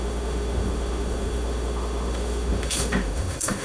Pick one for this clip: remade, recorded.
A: remade